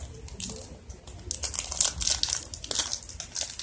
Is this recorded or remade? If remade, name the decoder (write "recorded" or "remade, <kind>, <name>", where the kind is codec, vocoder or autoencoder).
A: recorded